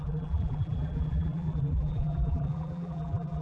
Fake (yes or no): yes